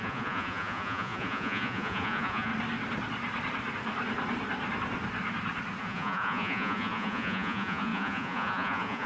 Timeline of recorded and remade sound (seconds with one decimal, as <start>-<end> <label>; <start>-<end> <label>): 0.0-2.5 remade; 2.5-5.8 recorded; 5.8-9.1 remade